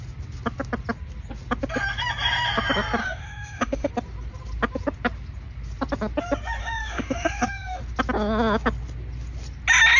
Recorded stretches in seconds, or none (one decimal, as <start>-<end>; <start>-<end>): 0.0-3.0; 3.9-6.6; 7.8-10.0